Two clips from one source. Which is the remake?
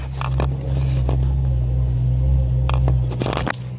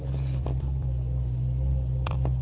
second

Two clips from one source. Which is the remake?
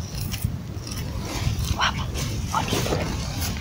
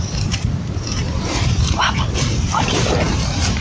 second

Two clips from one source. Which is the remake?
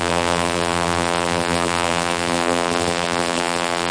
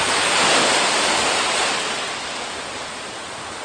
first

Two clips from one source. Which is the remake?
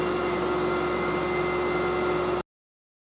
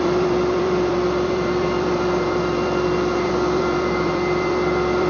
second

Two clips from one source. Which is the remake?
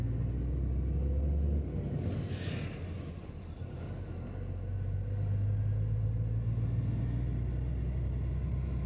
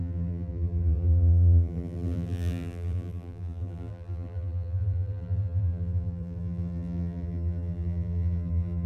second